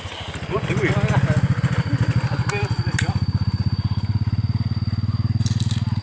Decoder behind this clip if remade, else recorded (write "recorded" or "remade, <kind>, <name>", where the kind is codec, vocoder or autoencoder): recorded